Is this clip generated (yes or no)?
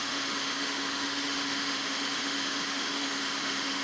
yes